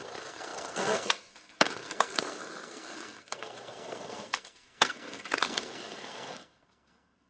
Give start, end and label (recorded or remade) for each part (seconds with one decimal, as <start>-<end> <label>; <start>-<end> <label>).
0.0-7.3 remade